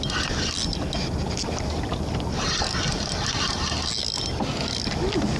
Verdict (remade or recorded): recorded